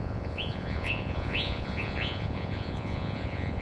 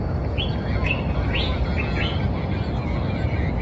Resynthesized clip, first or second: first